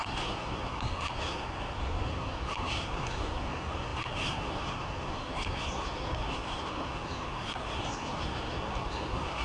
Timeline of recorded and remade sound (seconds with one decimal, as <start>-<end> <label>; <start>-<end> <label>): 0.0-9.4 remade